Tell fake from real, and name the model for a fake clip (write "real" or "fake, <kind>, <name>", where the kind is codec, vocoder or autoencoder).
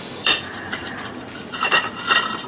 fake, vocoder, BigVGAN v2